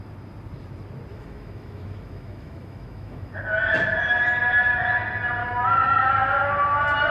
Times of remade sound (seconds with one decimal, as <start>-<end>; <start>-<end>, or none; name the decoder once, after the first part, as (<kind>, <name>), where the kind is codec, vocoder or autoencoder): 1.1-3.3 (autoencoder, DAC-VAE); 5.4-6.1